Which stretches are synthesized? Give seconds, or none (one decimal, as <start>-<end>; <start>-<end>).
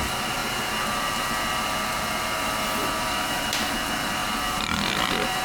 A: none